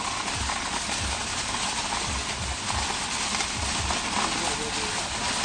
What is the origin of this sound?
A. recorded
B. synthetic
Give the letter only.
A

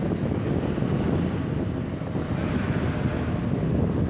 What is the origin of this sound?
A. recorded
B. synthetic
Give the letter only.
A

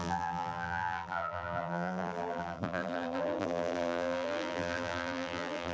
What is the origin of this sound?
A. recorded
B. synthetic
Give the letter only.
B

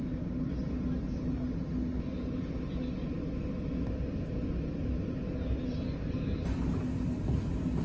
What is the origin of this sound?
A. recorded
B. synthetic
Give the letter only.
A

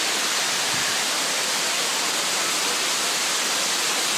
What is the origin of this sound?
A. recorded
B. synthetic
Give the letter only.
A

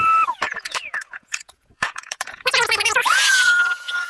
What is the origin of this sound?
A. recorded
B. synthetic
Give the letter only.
B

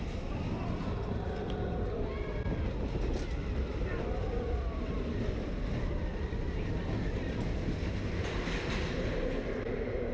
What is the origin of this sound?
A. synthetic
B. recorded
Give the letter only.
B